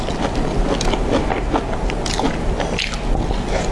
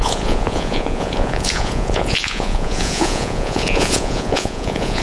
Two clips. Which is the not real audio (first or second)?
second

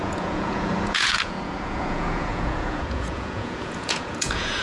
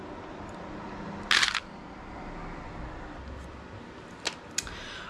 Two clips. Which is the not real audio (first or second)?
first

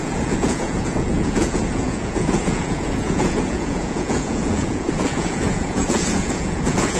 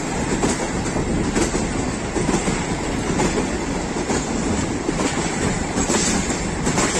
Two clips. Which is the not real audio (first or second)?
first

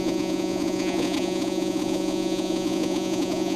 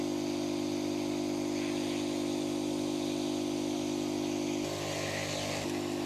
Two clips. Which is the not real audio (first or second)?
first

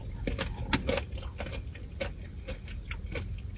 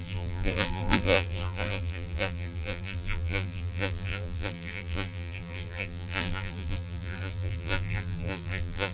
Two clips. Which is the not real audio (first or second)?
second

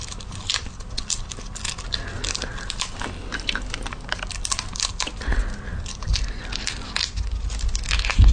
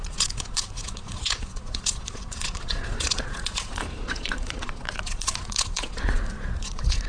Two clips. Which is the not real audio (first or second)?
second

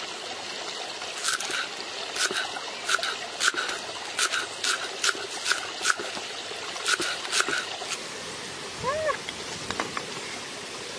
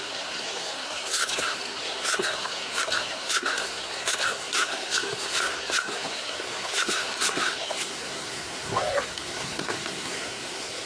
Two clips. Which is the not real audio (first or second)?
second